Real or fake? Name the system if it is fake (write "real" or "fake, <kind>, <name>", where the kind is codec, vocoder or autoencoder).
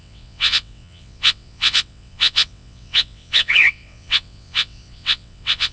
fake, vocoder, WaveNeXt